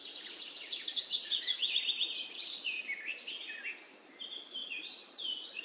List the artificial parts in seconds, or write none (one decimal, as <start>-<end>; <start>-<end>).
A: 0.0-3.0; 4.6-5.6